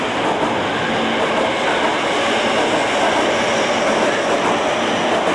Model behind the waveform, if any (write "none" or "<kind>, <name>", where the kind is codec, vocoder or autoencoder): none